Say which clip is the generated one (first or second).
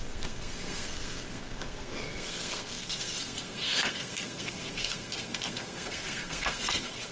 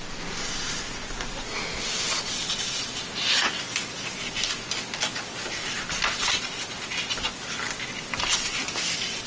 first